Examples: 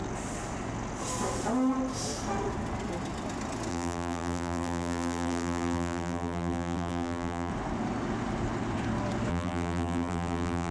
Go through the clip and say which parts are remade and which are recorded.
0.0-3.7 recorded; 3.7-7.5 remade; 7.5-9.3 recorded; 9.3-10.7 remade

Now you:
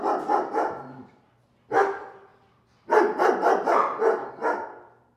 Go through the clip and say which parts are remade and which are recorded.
0.0-2.3 recorded; 2.3-4.3 remade; 4.3-5.2 recorded

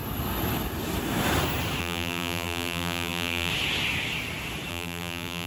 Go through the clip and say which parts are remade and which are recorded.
0.0-1.8 recorded; 1.8-3.5 remade; 3.5-4.7 recorded; 4.7-5.5 remade

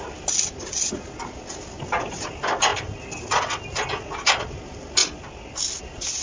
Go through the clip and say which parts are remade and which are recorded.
0.0-6.2 recorded

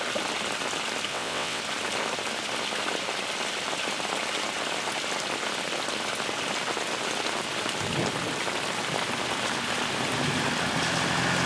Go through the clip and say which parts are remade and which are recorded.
0.0-1.1 recorded; 1.1-1.6 remade; 1.6-11.5 recorded

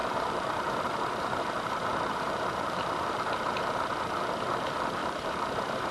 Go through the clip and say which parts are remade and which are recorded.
0.0-3.5 remade; 3.5-5.0 recorded; 5.0-5.9 remade

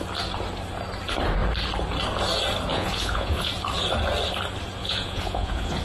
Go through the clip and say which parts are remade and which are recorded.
0.0-2.7 recorded; 2.7-3.5 remade; 3.5-4.8 recorded; 4.8-5.8 remade